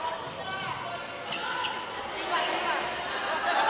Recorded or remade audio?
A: recorded